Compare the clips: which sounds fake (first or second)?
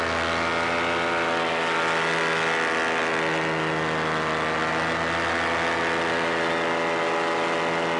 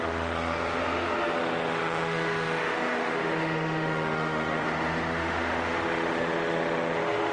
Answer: second